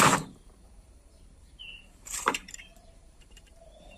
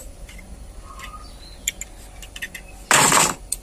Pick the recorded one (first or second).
second